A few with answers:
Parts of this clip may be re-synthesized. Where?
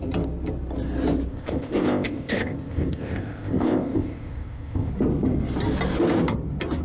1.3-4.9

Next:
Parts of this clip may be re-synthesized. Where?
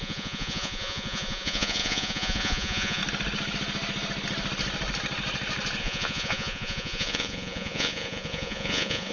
0.0-3.0; 5.8-9.1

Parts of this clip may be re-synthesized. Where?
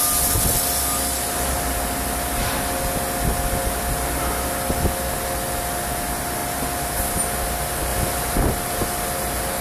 none